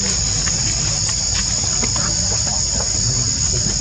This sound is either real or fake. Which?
real